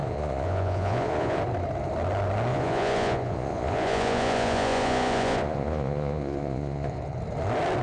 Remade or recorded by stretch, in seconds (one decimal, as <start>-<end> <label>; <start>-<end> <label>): 0.0-1.4 remade; 1.4-2.5 recorded; 2.5-7.2 remade; 7.2-7.8 recorded